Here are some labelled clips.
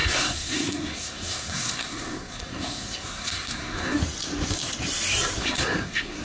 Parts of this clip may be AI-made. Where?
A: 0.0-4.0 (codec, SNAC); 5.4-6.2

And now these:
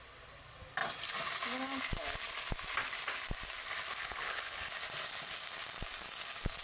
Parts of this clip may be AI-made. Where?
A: 3.9-4.7 (codec, HILCodec)

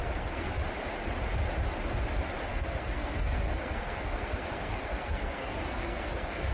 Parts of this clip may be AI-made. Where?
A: 0.0-0.5 (codec, SNAC); 2.5-6.5

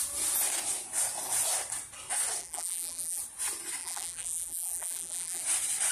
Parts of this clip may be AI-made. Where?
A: 2.4-3.2 (vocoder, BigVGAN v2); 3.8-5.4

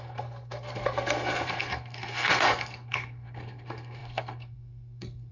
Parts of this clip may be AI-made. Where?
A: 0.0-5.3 (codec, SNAC)

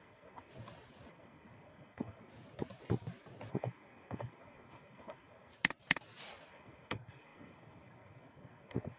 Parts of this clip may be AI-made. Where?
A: 0.0-0.5 (codec, SNAC); 1.1-2.3; 3.5-5.5; 6.5-9.0

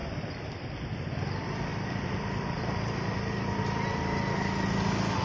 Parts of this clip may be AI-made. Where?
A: 0.0-0.5 (vocoder, BigVGAN v2); 1.7-3.6

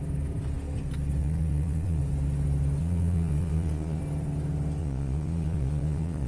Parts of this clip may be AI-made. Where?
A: 1.2-2.0 (vocoder, Vocos); 2.8-4.0; 4.8-6.3